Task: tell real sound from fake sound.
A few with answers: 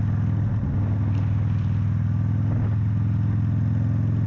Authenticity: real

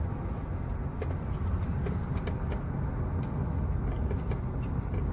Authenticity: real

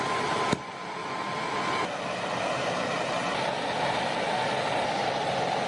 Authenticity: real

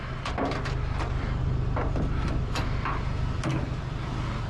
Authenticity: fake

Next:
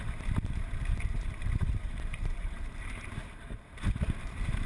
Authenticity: fake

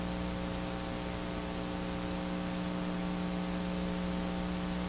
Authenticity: real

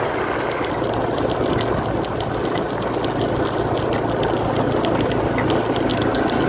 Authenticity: real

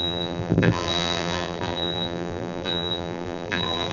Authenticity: fake